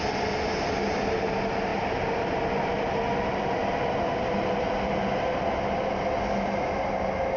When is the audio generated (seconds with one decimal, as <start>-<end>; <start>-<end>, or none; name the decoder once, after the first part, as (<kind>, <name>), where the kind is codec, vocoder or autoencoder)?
none